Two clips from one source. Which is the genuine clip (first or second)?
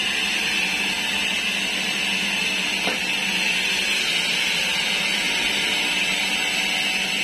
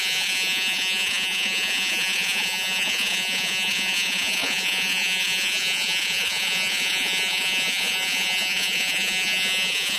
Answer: first